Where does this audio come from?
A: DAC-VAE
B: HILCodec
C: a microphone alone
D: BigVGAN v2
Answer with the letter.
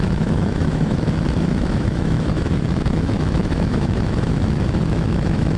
A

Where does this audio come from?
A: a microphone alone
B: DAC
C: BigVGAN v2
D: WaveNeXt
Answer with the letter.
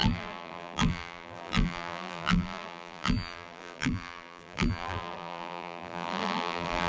C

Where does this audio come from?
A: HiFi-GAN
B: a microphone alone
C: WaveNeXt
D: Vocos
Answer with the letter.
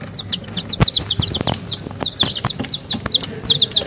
B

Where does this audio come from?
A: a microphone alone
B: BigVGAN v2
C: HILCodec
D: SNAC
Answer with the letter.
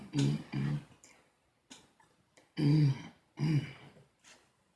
A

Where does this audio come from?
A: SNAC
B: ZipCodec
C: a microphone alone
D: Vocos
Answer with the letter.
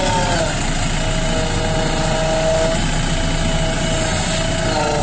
C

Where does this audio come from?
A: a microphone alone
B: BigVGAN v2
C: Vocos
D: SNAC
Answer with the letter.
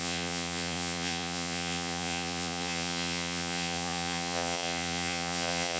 C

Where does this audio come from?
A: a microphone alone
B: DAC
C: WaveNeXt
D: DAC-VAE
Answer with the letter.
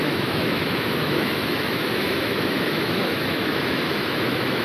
D